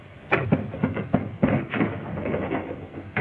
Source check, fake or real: fake